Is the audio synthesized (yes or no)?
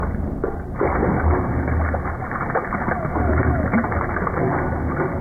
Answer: no